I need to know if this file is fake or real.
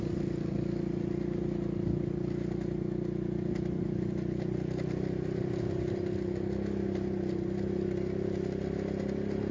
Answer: real